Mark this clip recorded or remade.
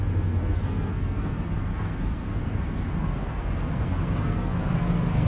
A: remade